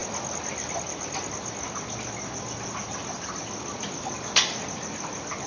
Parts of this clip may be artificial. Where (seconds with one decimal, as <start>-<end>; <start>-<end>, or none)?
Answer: none